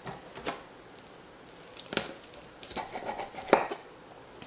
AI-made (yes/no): no